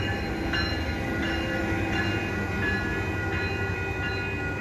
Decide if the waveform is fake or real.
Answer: real